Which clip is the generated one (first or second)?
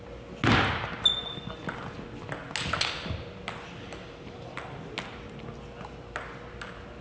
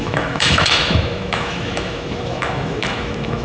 second